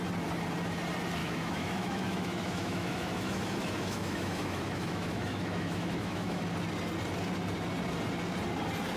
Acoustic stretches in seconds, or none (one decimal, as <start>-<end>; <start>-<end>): 0.0-1.2; 6.4-9.0